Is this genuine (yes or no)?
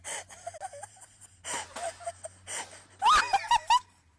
yes